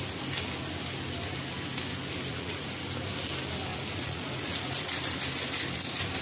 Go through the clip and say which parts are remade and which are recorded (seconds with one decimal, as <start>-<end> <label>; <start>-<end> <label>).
0.0-2.3 recorded; 2.3-2.8 remade; 2.8-3.7 recorded; 3.7-5.0 remade; 5.0-6.2 recorded